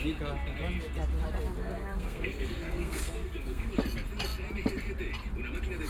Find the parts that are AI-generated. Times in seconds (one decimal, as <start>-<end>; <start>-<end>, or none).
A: 1.6-3.7